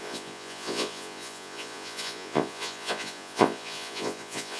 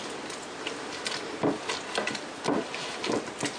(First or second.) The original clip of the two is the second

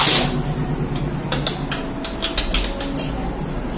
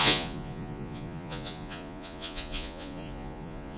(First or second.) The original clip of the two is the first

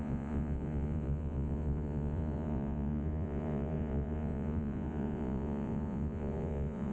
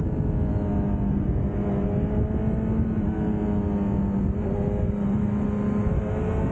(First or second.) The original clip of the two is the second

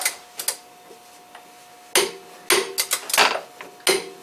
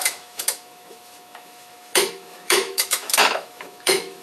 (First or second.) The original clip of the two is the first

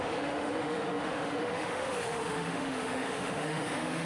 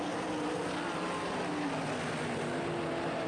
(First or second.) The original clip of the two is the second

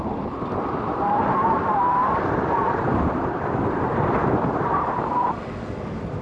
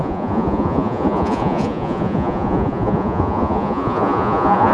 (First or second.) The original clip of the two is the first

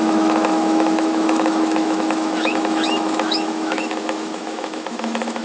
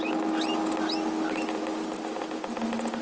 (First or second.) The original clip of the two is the second